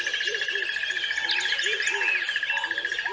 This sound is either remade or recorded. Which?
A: recorded